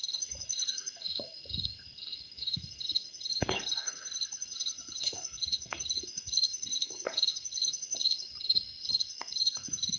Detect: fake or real fake